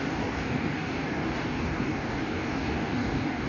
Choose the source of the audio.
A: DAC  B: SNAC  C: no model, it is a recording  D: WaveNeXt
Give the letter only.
A